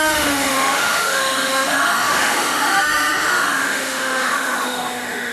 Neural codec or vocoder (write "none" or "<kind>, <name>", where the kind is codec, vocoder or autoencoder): autoencoder, DAC-VAE